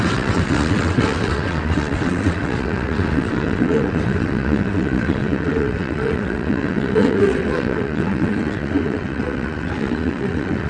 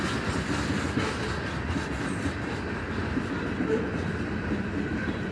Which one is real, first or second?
second